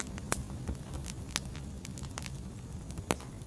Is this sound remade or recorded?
recorded